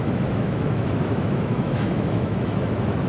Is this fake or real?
fake